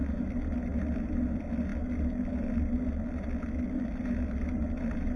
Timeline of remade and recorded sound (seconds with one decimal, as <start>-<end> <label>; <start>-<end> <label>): 0.0-5.2 recorded